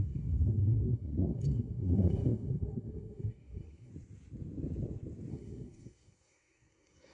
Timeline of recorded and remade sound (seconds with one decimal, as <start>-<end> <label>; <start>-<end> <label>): 0.0-3.9 remade; 3.9-5.3 recorded; 5.3-7.1 remade